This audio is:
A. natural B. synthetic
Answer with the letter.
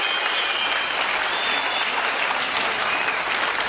A